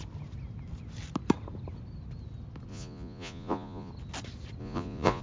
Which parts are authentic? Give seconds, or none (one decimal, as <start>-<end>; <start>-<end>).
0.0-2.7; 3.9-4.6